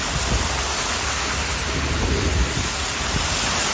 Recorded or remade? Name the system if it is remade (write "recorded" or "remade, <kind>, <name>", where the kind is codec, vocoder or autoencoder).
recorded